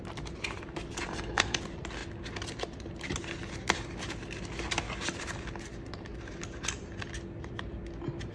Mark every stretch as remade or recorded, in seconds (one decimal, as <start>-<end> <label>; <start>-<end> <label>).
0.0-1.1 recorded; 1.1-1.6 remade; 1.6-8.3 recorded

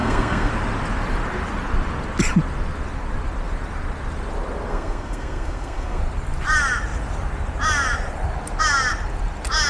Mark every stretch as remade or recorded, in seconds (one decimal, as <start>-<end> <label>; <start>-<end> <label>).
0.0-0.5 remade; 0.5-4.7 recorded; 4.7-6.0 remade; 6.0-9.7 recorded

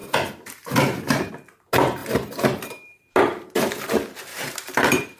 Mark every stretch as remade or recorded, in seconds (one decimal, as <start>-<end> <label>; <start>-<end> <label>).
0.0-1.3 remade; 1.3-4.3 recorded; 4.3-5.2 remade

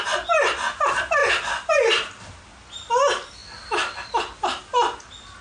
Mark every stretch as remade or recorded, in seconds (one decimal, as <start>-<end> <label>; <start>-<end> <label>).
0.0-1.2 recorded; 1.2-2.4 remade; 2.4-5.4 recorded

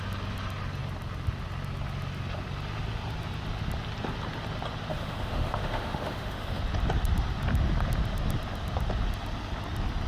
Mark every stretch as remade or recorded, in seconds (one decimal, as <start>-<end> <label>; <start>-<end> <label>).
0.0-4.9 recorded; 4.9-6.6 remade; 6.6-10.1 recorded